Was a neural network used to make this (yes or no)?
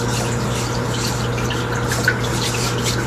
no